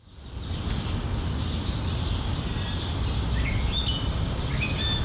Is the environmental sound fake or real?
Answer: real